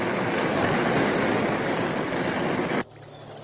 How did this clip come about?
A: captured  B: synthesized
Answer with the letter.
A